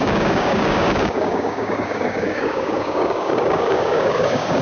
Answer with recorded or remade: remade